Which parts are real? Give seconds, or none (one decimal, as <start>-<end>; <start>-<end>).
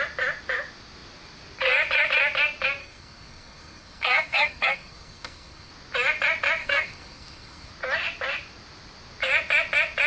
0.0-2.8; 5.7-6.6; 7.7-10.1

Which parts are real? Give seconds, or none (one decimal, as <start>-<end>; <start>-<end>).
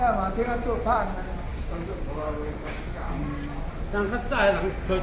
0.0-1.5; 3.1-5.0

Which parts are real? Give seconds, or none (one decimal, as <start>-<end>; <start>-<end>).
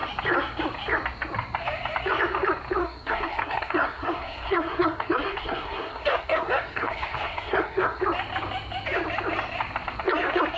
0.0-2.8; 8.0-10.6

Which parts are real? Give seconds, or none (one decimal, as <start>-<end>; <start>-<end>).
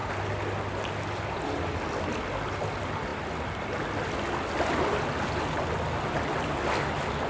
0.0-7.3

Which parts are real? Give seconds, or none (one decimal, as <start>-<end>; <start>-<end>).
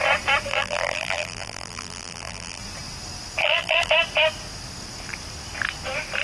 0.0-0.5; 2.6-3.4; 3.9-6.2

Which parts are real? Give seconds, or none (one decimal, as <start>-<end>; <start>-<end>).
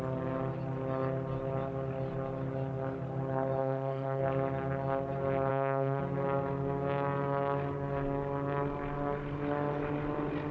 0.0-3.6; 4.2-5.5; 6.0-10.5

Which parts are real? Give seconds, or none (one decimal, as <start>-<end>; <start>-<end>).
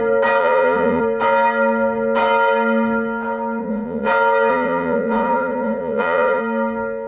0.0-0.4; 1.0-3.6; 4.1-4.5; 6.4-7.1